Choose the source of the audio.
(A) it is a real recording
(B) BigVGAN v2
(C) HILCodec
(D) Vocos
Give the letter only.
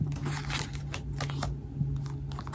A